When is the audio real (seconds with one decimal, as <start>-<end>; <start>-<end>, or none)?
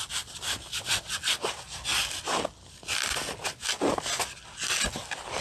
0.0-5.4